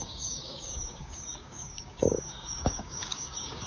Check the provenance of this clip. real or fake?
fake